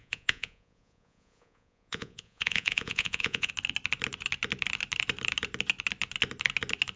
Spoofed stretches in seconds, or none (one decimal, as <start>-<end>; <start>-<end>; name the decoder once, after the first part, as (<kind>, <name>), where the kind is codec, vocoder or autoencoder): 0.0-3.5 (vocoder, Vocos)